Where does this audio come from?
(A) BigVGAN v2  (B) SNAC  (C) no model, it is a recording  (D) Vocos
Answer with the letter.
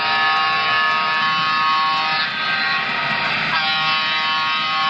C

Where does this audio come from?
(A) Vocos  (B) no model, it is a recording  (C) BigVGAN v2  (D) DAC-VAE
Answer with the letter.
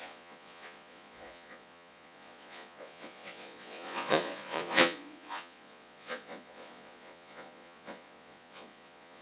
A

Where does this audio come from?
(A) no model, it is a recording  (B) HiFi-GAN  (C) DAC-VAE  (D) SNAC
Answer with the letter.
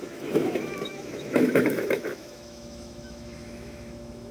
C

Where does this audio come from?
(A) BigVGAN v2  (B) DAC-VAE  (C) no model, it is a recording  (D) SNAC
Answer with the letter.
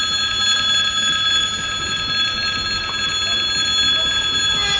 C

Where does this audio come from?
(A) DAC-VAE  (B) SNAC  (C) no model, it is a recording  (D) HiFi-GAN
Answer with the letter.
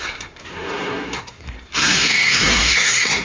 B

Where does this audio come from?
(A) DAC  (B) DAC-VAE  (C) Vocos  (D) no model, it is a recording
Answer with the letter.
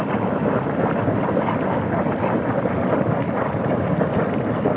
D